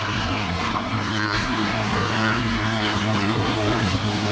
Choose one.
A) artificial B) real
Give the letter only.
A